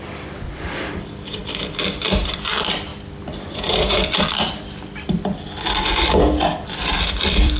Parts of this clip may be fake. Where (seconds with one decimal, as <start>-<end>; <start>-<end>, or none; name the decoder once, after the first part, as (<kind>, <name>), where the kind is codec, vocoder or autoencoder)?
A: 0.0-1.4 (vocoder, BigVGAN v2); 2.2-7.6